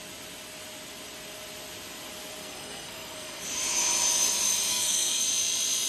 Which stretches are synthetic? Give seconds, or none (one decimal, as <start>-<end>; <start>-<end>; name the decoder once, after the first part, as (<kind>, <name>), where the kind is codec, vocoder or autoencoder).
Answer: 2.4-3.4 (codec, SNAC); 4.7-5.2